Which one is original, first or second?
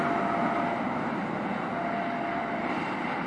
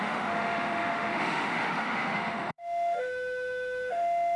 first